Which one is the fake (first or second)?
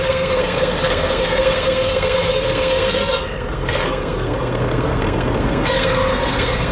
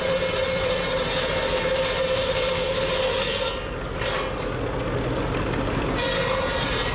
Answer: first